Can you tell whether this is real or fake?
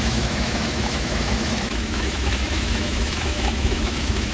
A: fake